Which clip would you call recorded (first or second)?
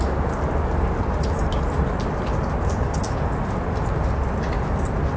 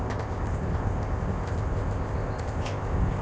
first